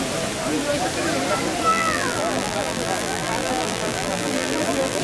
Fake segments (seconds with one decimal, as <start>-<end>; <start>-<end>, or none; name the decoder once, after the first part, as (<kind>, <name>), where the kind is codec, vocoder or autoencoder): 1.7-5.0 (vocoder, BigVGAN v2)